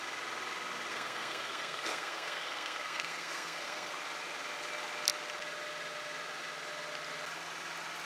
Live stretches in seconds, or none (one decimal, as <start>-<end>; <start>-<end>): 0.0-0.9; 3.9-8.0